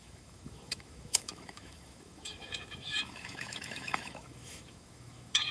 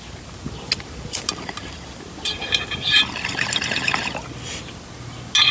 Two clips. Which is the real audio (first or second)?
second